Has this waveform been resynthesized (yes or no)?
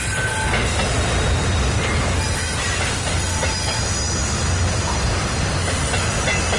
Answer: no